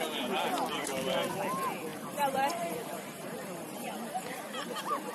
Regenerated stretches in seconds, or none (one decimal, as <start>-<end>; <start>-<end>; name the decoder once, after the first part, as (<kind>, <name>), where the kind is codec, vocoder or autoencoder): 1.9-5.1 (vocoder, BigVGAN v2)